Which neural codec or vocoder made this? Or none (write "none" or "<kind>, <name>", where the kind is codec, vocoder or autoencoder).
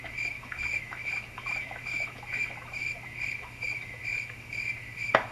autoencoder, DAC-VAE